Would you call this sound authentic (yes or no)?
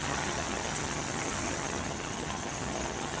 no